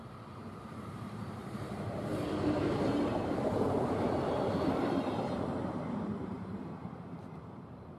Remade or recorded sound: remade